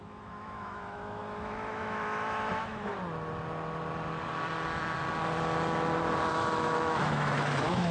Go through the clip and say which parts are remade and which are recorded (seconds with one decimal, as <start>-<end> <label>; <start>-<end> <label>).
0.0-2.9 remade; 2.9-6.3 recorded; 6.3-7.9 remade